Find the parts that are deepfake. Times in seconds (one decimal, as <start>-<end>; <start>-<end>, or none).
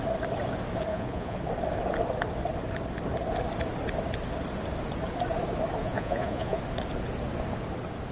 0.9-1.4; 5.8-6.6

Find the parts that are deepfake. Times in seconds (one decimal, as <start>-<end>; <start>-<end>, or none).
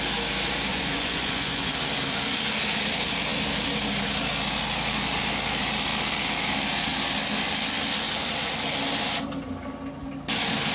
0.7-1.7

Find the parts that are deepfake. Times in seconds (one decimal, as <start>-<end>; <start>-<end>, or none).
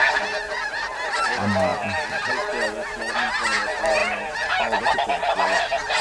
none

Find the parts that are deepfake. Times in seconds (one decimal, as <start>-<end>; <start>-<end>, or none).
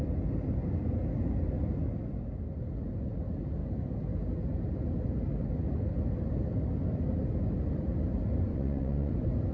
8.5-9.1